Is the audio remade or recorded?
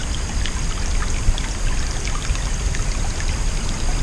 recorded